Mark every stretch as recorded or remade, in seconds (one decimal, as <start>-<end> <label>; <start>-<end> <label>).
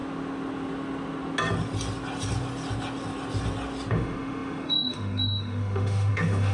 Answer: 0.0-3.9 recorded; 3.9-6.5 remade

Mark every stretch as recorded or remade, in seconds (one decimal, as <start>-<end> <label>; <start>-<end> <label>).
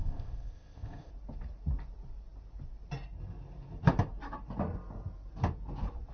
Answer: 0.0-1.1 remade; 1.1-6.1 recorded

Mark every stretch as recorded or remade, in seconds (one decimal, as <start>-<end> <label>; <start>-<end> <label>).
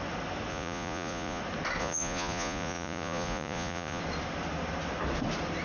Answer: 0.0-0.5 recorded; 0.5-1.4 remade; 1.4-1.8 recorded; 1.8-4.0 remade; 4.0-5.6 recorded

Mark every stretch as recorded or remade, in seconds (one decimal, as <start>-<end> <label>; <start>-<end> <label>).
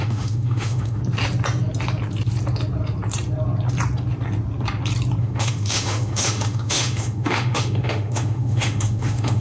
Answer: 0.0-1.0 remade; 1.0-5.2 recorded; 5.2-9.4 remade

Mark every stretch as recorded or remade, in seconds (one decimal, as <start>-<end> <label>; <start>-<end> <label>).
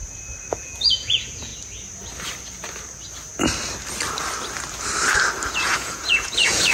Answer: 0.0-0.5 recorded; 0.5-1.5 remade; 1.5-5.5 recorded; 5.5-6.7 remade